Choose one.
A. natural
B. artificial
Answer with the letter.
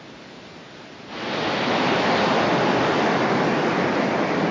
B